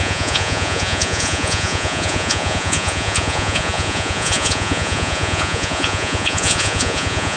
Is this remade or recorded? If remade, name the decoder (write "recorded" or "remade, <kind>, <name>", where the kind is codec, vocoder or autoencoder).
remade, vocoder, Vocos